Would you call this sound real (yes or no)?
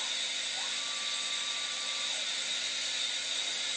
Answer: yes